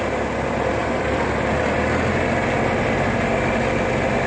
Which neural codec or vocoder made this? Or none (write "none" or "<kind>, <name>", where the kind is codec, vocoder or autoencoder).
none